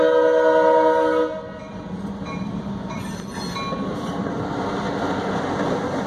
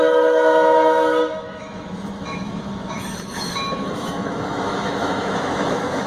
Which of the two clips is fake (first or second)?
second